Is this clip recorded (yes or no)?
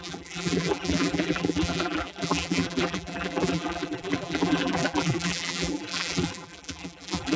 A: no